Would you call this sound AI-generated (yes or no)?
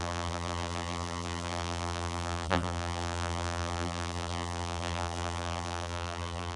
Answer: yes